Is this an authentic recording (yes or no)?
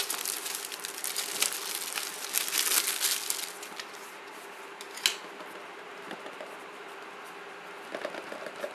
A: yes